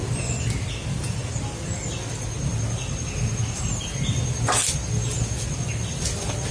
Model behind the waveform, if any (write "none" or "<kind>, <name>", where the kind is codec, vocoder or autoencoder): none